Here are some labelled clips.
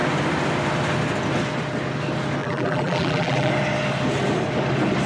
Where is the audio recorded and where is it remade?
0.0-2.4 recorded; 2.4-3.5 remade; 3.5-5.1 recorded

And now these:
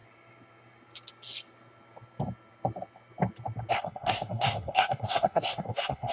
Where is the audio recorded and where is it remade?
0.0-3.7 recorded; 3.7-6.1 remade